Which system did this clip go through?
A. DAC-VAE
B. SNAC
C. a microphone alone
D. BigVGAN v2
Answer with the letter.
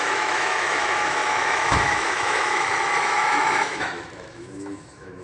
A